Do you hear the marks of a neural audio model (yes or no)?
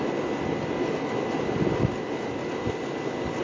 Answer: no